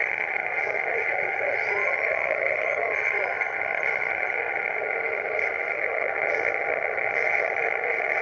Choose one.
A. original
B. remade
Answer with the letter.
B